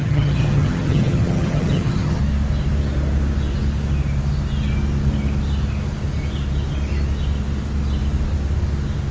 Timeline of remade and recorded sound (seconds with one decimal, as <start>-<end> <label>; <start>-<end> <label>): 0.0-2.2 remade; 2.2-9.1 recorded